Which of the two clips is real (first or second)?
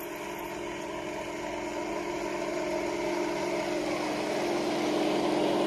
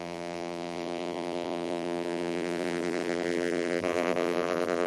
first